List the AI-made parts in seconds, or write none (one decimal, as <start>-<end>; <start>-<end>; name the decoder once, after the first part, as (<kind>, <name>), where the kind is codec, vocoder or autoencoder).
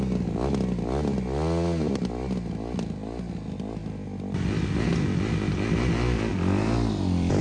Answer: 6.3-7.4 (vocoder, BigVGAN v2)